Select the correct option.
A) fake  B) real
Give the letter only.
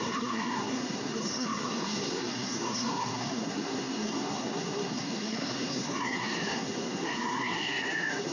A